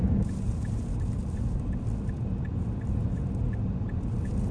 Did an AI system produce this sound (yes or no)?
no